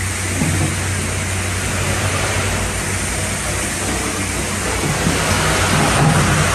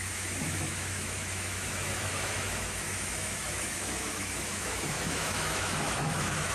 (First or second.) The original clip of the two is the first